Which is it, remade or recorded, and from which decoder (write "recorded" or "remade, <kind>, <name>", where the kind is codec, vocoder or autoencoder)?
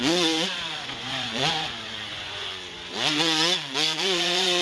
remade, vocoder, Vocos